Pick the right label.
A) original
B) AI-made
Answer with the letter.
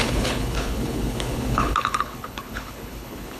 B